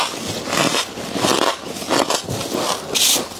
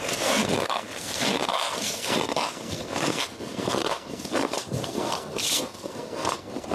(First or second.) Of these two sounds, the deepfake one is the second